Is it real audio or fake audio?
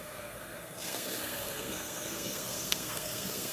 fake